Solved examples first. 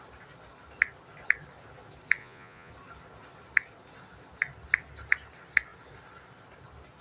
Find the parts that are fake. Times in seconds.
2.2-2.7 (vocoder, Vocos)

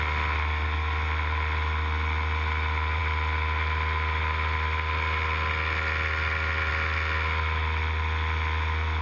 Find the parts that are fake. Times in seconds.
none

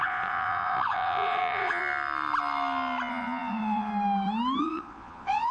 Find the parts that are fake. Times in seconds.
0.0-1.8 (vocoder, Vocos); 3.1-3.9; 4.6-5.5

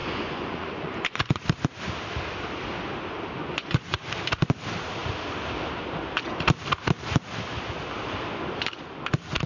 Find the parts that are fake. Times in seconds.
0.0-1.4 (vocoder, Vocos); 3.4-4.1